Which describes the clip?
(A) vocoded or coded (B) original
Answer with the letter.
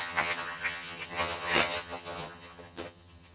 A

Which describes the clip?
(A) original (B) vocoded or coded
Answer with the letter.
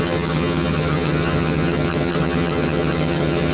B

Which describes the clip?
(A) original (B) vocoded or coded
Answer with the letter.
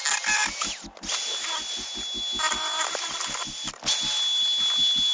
A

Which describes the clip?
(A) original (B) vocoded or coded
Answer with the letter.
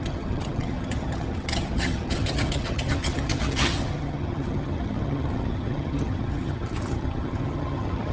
B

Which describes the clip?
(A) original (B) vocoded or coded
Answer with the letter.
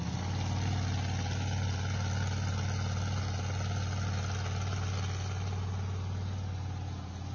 A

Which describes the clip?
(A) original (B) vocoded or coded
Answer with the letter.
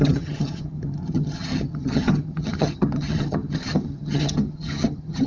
B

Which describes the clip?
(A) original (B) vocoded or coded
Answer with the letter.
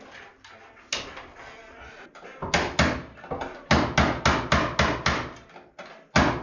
A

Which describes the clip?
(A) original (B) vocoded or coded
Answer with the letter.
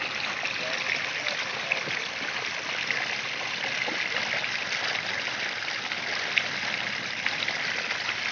A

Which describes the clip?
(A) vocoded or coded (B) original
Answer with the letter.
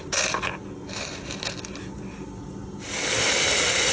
B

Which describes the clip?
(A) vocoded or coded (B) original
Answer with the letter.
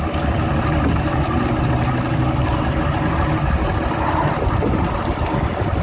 B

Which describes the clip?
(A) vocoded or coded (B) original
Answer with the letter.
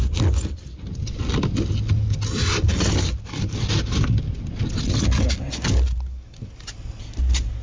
B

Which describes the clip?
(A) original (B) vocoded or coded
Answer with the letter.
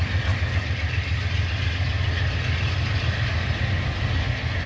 A